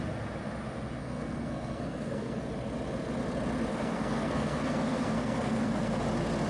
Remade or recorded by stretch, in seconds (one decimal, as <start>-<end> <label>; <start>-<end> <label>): 0.0-1.0 recorded; 1.0-2.5 remade; 2.5-3.7 recorded; 3.7-6.0 remade; 6.0-6.5 recorded